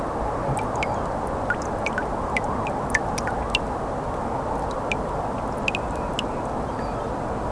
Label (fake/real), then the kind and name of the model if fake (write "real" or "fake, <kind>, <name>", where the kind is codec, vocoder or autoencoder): real